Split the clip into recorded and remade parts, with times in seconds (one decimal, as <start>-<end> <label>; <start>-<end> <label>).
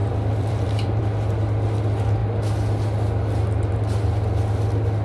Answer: 0.0-1.0 remade; 1.0-5.0 recorded